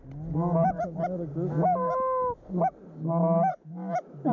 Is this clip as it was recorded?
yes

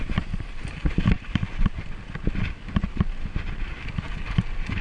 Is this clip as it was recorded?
yes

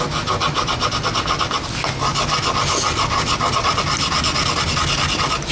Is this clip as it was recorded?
yes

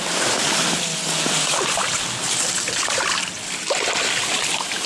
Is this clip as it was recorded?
yes